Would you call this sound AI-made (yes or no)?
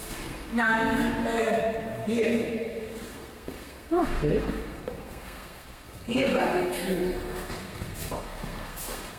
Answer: yes